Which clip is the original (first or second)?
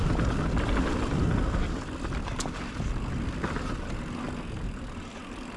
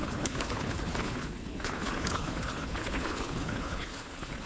first